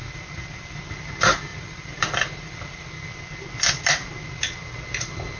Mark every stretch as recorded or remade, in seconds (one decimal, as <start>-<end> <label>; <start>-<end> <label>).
0.0-1.1 remade; 1.1-1.5 recorded; 1.5-2.9 remade; 2.9-5.4 recorded